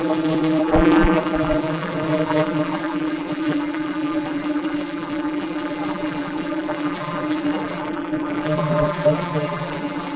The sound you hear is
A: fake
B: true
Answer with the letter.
A